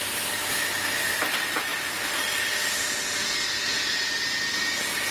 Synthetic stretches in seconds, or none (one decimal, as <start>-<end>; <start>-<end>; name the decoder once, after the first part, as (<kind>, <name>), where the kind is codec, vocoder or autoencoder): none